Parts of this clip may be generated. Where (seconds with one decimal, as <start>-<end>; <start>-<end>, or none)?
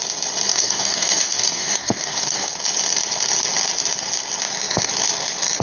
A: 0.5-2.5